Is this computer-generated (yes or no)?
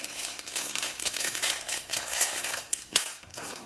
yes